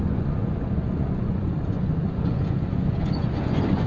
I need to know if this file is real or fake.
fake